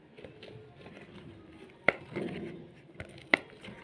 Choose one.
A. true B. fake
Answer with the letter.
A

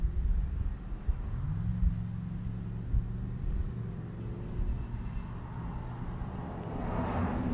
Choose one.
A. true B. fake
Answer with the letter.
A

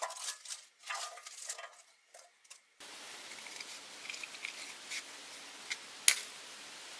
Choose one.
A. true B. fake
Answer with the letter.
A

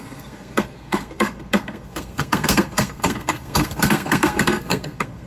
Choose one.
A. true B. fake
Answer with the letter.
B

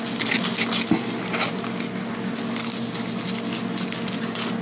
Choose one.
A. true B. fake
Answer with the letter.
A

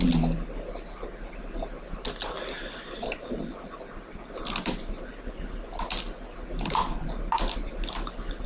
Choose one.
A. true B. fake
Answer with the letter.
A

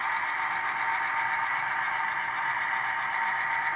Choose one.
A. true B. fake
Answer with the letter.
A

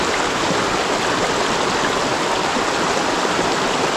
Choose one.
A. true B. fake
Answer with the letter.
A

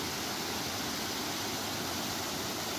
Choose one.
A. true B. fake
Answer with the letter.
A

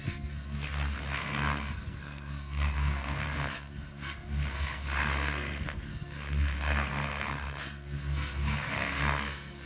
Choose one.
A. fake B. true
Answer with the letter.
A